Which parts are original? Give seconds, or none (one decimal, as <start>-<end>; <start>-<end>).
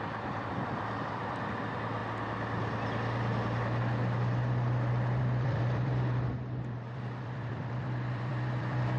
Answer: 2.0-5.2